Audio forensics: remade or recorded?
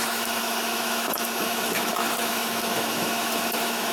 remade